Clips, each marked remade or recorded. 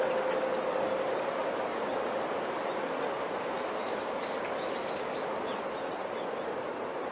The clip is recorded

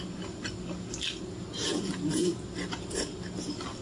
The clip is recorded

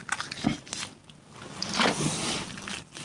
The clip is recorded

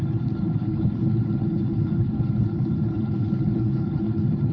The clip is remade